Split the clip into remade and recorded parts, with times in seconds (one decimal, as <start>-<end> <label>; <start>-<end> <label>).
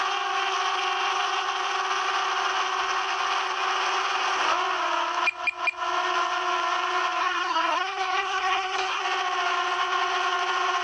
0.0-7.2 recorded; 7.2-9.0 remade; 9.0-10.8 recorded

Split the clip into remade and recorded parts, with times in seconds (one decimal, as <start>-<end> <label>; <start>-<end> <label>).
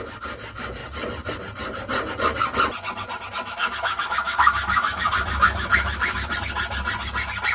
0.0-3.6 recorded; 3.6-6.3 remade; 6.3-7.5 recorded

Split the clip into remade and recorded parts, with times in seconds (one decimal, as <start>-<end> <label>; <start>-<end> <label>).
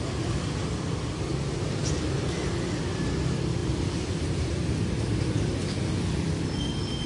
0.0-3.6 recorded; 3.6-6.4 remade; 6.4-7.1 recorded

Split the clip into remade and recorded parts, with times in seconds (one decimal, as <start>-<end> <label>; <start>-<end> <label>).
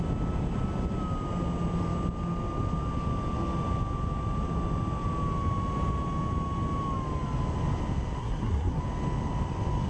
0.0-8.2 recorded; 8.2-8.8 remade; 8.8-9.9 recorded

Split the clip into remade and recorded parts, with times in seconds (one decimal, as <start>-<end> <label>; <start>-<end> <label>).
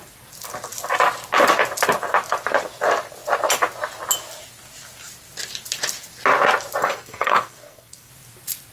0.0-6.8 recorded; 6.8-8.1 remade; 8.1-8.7 recorded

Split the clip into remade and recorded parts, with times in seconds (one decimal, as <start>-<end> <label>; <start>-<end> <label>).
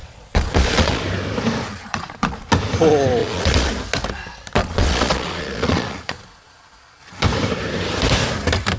0.0-1.0 remade; 1.0-1.7 recorded; 1.7-2.5 remade; 2.5-3.2 recorded; 3.2-3.7 remade; 3.7-4.6 recorded; 4.6-7.0 remade; 7.0-8.8 recorded